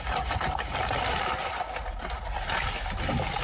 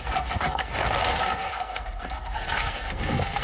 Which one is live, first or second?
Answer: first